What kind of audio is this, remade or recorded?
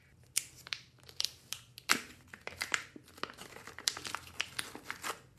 recorded